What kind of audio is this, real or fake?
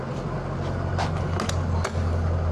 real